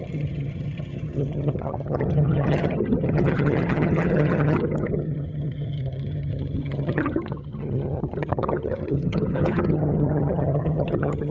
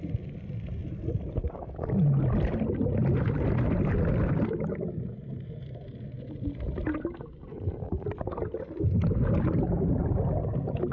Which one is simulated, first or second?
first